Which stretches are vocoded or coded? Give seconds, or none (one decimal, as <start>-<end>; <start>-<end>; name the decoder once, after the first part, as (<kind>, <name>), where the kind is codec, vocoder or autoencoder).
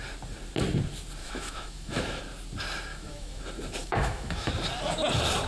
1.2-2.2 (autoencoder, DAC-VAE); 2.9-3.4; 3.8-4.5